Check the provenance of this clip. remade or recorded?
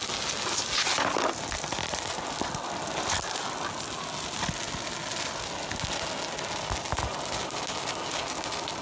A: recorded